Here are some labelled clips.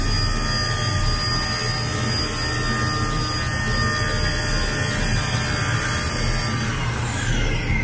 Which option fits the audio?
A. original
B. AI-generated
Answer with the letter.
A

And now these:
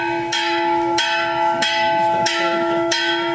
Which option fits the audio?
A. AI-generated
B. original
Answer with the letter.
A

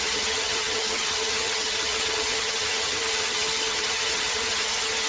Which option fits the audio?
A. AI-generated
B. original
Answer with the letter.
A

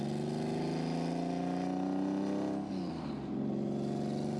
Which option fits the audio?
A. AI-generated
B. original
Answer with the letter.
B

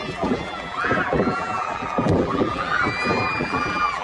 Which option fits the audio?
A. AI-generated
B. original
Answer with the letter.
A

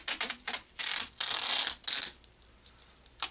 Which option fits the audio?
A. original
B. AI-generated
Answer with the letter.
A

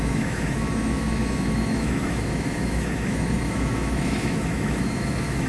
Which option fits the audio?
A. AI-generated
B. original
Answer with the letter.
A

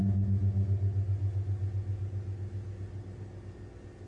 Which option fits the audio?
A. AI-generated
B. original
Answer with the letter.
B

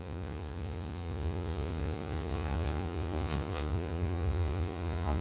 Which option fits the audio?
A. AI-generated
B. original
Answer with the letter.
A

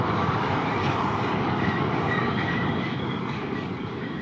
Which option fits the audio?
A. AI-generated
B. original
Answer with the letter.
A